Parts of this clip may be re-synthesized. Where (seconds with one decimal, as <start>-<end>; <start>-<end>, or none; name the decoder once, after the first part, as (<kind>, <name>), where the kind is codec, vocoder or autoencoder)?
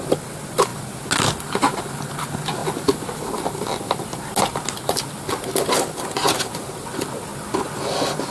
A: 2.6-4.2 (vocoder, BigVGAN v2)